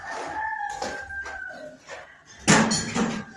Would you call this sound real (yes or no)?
yes